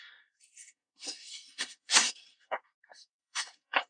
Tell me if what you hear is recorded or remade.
remade